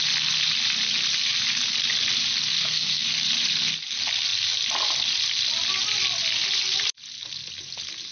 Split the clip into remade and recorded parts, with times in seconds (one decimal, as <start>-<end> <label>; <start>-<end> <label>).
0.0-2.6 recorded; 2.6-3.1 remade; 3.1-8.1 recorded